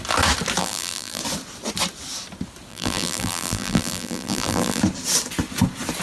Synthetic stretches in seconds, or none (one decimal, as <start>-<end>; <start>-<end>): 0.6-1.2; 2.7-4.8